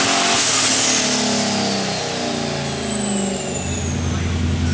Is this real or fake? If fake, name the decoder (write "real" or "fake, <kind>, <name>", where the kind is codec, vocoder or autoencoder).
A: real